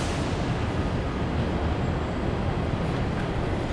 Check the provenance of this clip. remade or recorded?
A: recorded